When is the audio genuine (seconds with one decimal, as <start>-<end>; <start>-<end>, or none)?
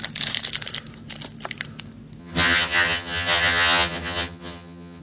0.0-2.2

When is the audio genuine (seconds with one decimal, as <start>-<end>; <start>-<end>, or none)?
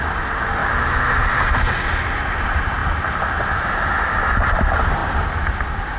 0.0-0.6; 1.2-6.0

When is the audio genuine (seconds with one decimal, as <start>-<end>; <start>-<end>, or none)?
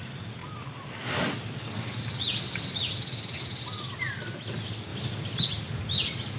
0.0-6.4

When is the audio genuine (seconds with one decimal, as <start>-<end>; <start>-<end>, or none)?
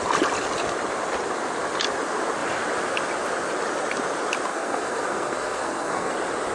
0.0-4.5; 6.1-6.5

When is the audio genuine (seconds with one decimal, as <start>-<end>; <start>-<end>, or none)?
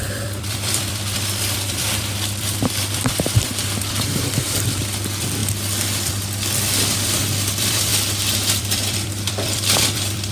5.4-6.9; 7.9-8.5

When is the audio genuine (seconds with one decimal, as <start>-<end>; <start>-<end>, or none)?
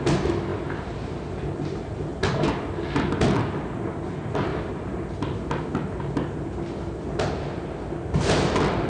0.0-8.9